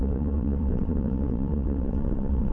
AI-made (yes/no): yes